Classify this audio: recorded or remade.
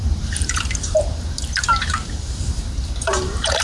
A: remade